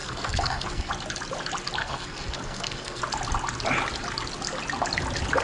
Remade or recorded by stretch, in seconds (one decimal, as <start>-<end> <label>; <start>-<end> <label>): 0.0-0.9 remade; 0.9-1.8 recorded; 1.8-3.0 remade; 3.0-5.4 recorded